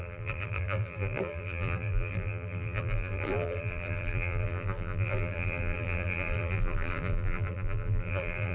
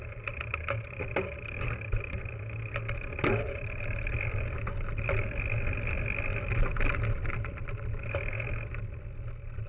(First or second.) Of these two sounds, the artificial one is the first